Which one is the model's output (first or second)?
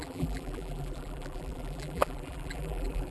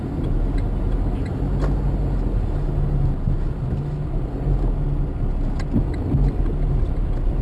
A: first